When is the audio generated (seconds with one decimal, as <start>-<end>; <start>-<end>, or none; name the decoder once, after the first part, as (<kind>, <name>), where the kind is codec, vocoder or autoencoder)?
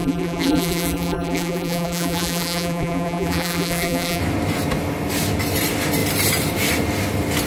0.0-4.2 (vocoder, BigVGAN v2)